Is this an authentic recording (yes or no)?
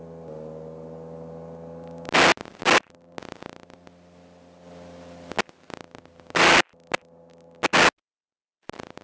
yes